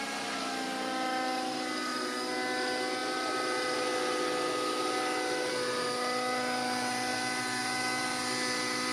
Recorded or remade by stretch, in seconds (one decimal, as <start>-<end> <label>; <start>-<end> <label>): 0.0-8.9 recorded